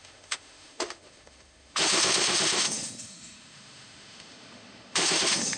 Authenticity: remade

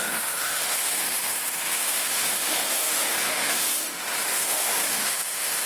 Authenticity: remade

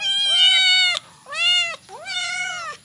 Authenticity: recorded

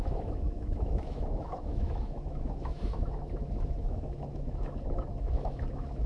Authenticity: remade